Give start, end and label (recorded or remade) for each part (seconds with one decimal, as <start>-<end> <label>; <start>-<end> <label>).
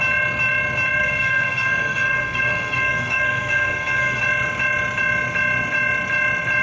0.0-1.0 recorded; 1.0-4.2 remade; 4.2-6.6 recorded